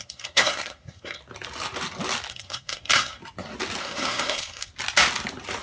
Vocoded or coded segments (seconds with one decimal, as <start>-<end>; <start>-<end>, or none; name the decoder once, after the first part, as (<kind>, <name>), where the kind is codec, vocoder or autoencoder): 0.0-1.2 (codec, SNAC); 2.3-3.2; 3.8-4.7

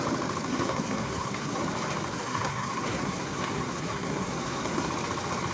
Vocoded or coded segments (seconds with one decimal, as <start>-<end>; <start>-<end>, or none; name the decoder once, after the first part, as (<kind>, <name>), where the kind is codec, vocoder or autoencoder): 0.5-1.6 (codec, SNAC); 2.1-4.9